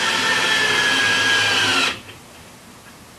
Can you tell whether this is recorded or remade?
recorded